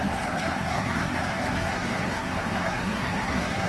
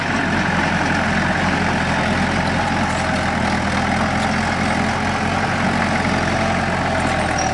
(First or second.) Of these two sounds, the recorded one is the second